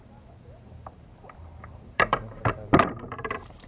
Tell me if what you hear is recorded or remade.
remade